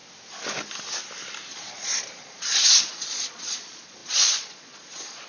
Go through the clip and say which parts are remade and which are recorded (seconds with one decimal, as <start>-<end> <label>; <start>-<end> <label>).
0.0-1.4 recorded; 1.4-5.3 remade